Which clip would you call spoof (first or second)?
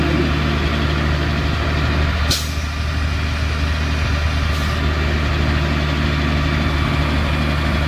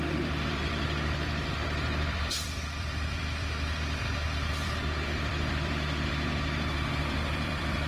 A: second